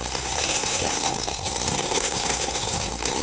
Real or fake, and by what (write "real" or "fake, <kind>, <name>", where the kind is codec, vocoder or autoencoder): fake, codec, SNAC